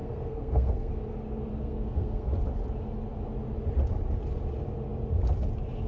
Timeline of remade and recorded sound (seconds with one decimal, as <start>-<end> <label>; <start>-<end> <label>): 0.0-0.9 remade; 0.9-1.5 recorded; 1.5-2.3 remade; 2.3-5.9 recorded